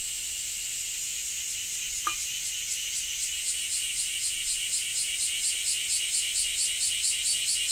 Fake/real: real